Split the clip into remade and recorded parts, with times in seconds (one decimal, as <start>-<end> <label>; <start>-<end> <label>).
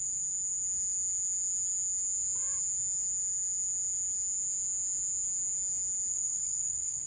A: 0.0-6.1 recorded; 6.1-7.1 remade